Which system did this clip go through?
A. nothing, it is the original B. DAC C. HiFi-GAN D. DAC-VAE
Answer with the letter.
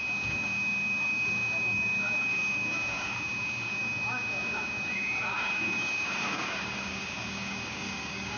B